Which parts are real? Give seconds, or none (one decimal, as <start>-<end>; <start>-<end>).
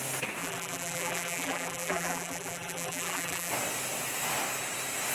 0.0-0.4; 3.5-5.1